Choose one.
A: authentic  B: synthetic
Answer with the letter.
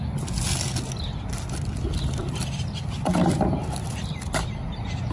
A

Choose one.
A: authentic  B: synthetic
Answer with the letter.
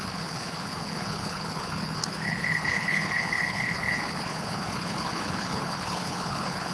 B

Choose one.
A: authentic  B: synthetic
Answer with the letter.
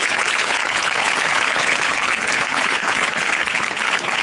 B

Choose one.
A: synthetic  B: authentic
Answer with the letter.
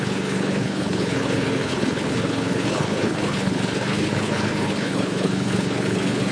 A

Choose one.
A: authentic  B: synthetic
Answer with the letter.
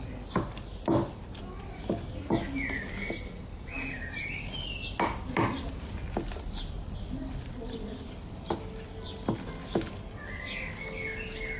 A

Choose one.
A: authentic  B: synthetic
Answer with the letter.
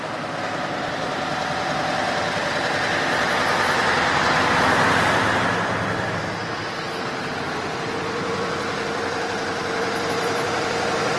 A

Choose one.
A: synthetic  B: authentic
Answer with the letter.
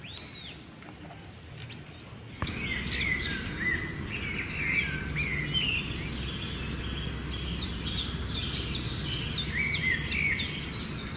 B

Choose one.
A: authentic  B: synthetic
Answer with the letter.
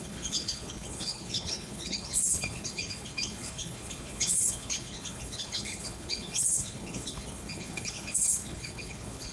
B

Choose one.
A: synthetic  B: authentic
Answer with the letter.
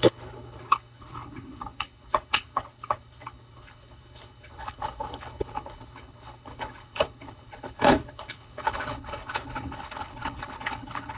A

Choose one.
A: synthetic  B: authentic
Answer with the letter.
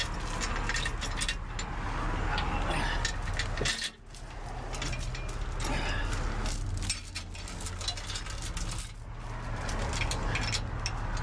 B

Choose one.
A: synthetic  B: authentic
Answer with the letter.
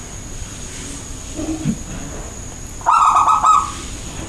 B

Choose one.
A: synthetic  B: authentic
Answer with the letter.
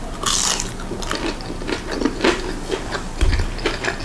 B